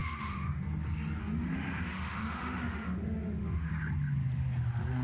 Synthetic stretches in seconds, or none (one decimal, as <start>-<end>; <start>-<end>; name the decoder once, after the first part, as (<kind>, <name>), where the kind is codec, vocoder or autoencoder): 0.0-0.6 (autoencoder, DAC-VAE); 1.2-3.7